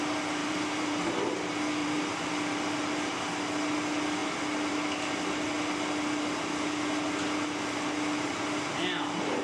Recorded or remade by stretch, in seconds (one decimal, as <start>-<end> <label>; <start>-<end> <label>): 0.0-0.4 recorded; 0.4-0.9 remade; 0.9-1.8 recorded; 1.8-2.3 remade; 2.3-9.4 recorded